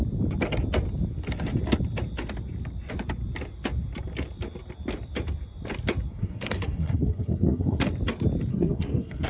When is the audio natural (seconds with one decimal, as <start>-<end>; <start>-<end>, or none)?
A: 0.0-6.2; 7.8-8.5